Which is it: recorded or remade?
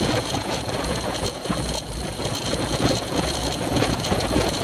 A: remade